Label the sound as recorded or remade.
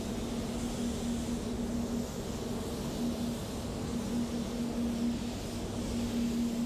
recorded